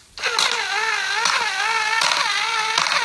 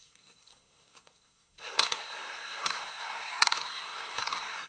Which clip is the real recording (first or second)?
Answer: first